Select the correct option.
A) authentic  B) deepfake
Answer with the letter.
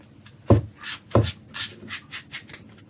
A